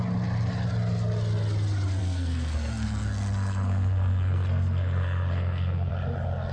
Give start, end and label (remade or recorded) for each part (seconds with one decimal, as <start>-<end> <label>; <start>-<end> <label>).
0.0-2.0 recorded; 2.0-5.9 remade; 5.9-6.5 recorded